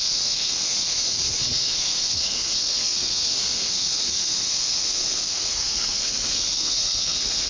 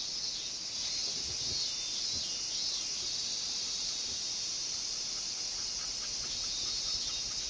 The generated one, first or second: first